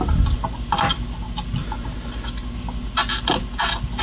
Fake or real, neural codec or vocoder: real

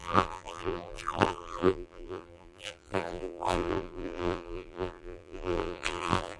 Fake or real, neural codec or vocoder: fake, vocoder, BigVGAN v2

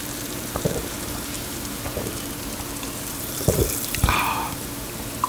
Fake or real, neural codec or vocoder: fake, vocoder, BigVGAN v2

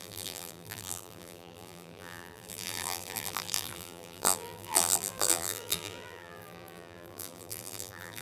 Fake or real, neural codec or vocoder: fake, vocoder, BigVGAN v2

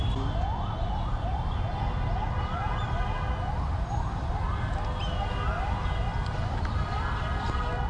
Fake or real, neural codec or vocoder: real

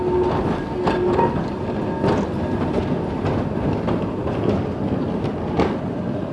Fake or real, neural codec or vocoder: real